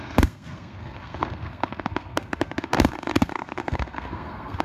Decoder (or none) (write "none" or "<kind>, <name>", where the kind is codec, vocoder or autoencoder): codec, SNAC